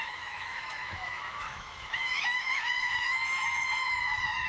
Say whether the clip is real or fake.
fake